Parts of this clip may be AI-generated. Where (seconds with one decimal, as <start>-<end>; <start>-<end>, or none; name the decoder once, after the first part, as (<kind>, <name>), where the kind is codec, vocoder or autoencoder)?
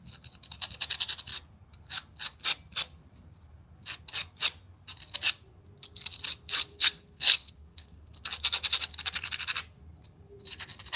6.7-8.2 (codec, SNAC)